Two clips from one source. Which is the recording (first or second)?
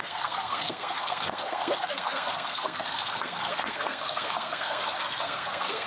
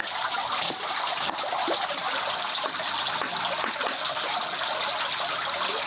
second